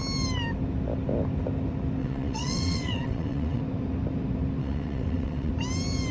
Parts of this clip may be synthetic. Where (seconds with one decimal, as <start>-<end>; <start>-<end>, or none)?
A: 2.0-3.6; 4.6-5.5